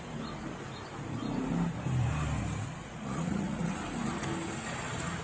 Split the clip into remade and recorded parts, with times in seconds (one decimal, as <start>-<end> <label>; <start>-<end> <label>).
0.0-2.8 recorded; 2.8-3.7 remade; 3.7-5.2 recorded